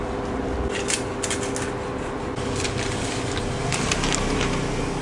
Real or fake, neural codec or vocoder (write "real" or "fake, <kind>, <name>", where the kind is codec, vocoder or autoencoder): real